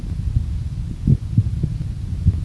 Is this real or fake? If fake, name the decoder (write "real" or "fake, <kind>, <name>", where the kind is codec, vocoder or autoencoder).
real